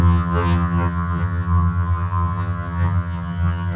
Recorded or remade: remade